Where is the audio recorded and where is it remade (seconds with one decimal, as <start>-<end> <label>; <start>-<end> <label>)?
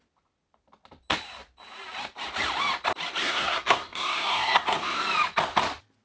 0.0-3.2 recorded; 3.2-5.0 remade; 5.0-6.0 recorded